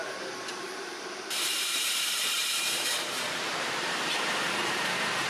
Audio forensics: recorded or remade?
remade